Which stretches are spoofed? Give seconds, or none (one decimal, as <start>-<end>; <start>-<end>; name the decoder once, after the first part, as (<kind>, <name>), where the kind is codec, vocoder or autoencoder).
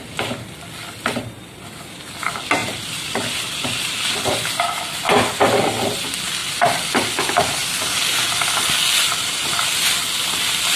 2.6-5.0 (vocoder, BigVGAN v2); 6.4-6.9